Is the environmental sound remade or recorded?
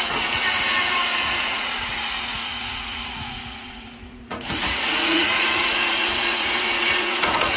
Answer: remade